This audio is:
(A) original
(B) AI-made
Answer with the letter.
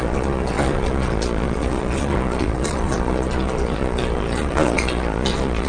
B